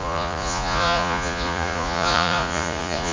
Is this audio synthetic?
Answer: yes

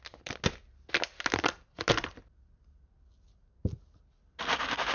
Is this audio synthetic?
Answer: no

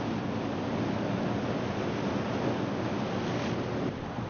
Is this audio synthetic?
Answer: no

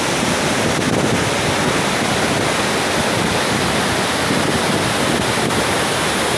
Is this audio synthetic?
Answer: no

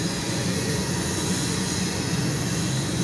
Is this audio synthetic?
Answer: yes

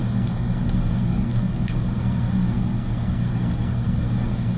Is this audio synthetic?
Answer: yes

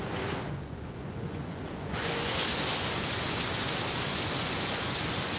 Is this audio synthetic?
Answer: yes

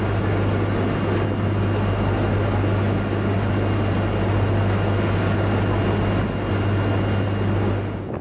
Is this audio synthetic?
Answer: no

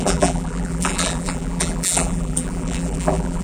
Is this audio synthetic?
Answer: yes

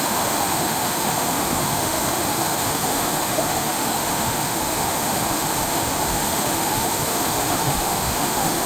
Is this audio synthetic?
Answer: yes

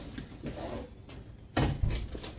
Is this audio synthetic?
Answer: no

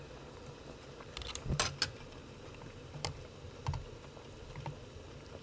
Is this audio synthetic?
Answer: no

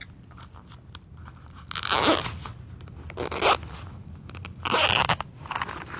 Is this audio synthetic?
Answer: no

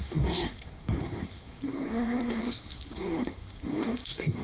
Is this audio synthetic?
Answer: yes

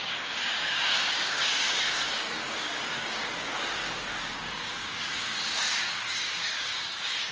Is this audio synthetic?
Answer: yes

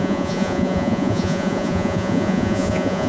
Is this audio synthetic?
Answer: yes